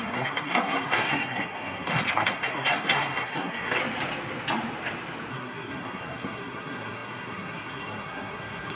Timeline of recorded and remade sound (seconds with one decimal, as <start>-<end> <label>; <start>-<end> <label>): 0.0-3.8 remade; 3.8-5.3 recorded; 5.3-8.8 remade